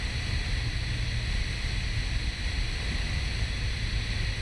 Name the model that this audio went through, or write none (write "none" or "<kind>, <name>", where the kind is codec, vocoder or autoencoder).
none